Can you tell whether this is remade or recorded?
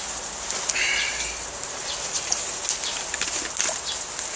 recorded